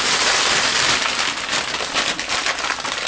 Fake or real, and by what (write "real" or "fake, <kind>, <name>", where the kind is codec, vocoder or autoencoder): real